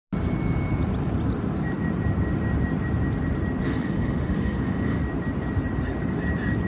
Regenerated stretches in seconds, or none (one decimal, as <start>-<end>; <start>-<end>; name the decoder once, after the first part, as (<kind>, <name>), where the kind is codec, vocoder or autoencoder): 3.6-5.0 (autoencoder, DAC-VAE)